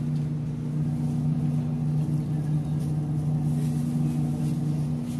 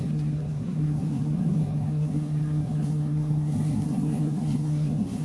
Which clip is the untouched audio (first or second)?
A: first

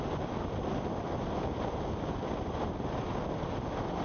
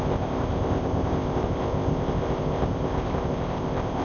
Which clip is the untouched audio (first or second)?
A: first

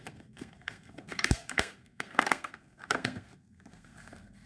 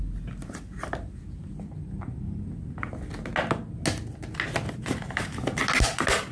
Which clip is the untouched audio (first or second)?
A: second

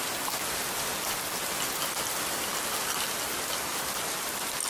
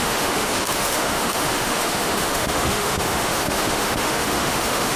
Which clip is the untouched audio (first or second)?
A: first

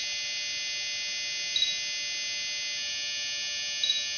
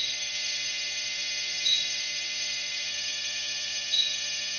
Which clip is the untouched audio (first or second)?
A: first